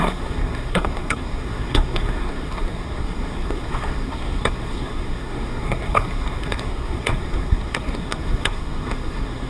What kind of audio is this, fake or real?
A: fake